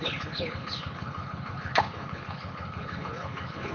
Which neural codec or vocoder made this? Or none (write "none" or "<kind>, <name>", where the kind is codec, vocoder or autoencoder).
codec, HILCodec